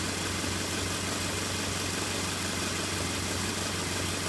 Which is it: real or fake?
real